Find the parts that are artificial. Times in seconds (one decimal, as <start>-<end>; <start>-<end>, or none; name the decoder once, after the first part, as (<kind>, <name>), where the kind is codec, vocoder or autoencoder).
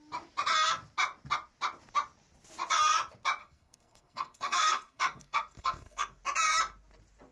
3.4-6.2 (codec, SNAC)